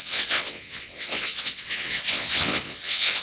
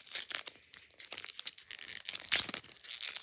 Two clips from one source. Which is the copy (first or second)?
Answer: first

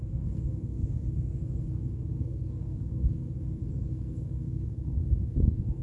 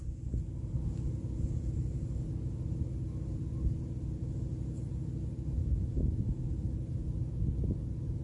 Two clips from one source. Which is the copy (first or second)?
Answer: first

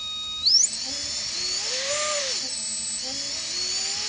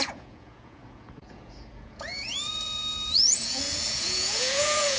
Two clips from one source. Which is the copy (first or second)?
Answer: second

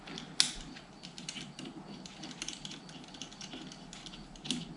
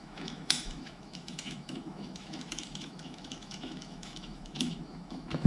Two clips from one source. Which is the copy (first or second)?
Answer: second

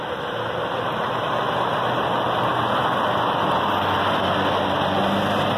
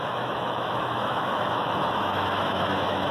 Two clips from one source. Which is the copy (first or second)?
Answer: second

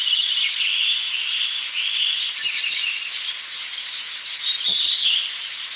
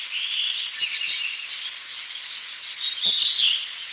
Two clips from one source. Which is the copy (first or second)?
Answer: first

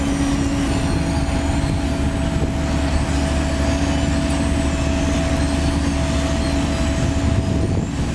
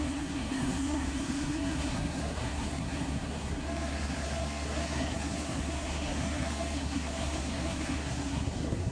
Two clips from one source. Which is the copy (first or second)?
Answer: second